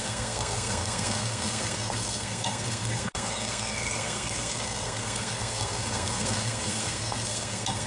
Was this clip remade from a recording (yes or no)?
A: yes